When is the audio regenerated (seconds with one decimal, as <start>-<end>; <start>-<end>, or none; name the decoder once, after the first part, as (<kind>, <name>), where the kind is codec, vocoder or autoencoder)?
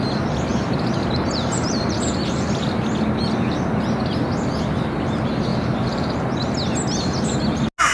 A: 0.5-2.6 (vocoder, BigVGAN v2); 5.5-6.2